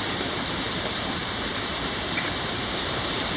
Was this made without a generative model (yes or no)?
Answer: no